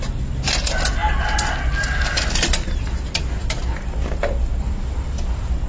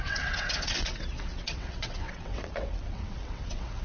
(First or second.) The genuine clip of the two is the first